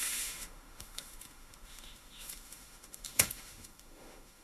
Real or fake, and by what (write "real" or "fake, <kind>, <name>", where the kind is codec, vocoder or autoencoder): fake, autoencoder, DAC-VAE